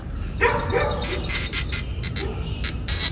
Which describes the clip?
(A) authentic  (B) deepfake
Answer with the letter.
A